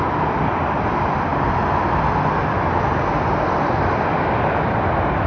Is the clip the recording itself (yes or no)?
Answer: yes